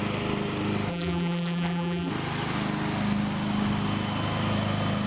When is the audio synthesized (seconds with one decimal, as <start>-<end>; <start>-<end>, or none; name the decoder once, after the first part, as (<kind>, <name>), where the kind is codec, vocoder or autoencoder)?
0.9-2.1 (vocoder, BigVGAN v2)